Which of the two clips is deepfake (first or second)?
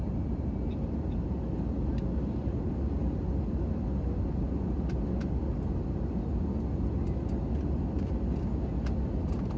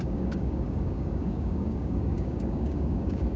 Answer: second